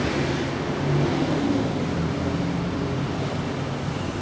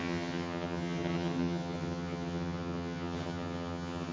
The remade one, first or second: second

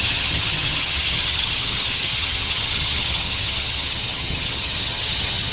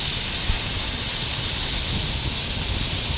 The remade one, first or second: first